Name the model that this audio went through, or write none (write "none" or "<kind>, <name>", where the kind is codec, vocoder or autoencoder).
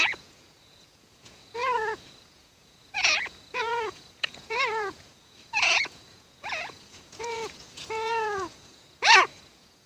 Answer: vocoder, Vocos